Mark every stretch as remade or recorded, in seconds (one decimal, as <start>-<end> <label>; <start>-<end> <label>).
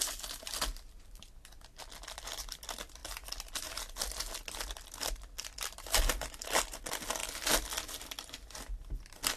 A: 0.0-9.4 recorded